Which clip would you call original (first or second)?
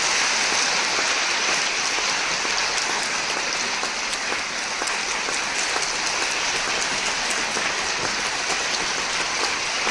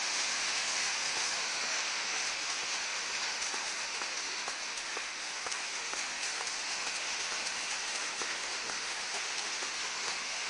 first